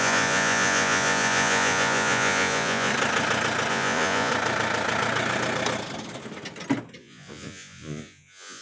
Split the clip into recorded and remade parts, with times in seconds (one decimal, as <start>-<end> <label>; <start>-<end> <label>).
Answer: 0.0-2.9 remade; 2.9-3.7 recorded; 3.7-4.3 remade; 4.3-7.0 recorded; 7.0-8.6 remade